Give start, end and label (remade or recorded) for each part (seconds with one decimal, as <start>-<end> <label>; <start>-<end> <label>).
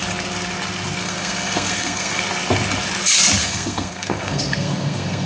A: 0.0-1.0 recorded; 1.0-2.2 remade; 2.2-3.4 recorded; 3.4-5.3 remade